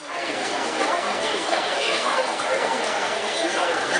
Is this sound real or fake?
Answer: fake